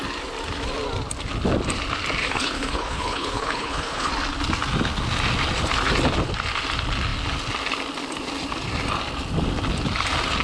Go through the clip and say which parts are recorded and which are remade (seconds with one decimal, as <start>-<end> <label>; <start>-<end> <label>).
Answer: 0.0-2.2 recorded; 2.2-4.1 remade; 4.1-10.4 recorded